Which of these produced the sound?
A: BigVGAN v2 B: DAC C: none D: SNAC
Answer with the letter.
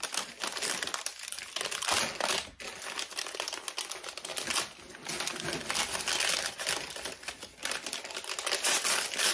C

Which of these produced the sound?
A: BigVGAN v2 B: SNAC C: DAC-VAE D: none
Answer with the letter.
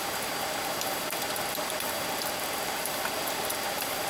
A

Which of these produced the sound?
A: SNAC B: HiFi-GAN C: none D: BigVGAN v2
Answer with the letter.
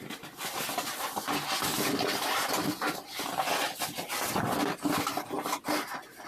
C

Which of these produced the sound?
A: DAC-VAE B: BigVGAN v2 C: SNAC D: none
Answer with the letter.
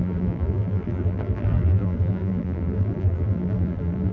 B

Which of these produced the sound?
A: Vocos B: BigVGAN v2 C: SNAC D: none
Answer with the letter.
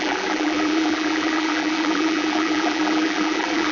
B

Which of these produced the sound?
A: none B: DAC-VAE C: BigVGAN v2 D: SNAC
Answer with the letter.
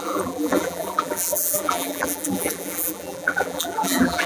C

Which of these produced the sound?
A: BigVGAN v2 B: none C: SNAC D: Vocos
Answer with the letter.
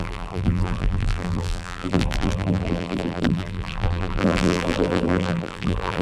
A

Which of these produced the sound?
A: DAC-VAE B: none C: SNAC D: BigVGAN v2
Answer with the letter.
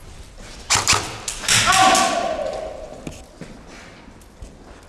B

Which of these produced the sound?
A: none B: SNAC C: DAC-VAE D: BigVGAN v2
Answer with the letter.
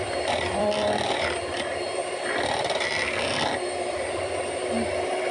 D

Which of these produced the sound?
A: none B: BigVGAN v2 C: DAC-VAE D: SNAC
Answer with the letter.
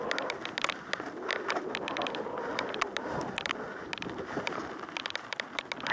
A